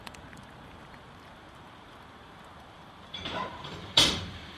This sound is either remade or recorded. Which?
remade